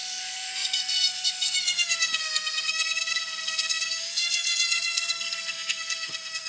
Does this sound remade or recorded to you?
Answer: remade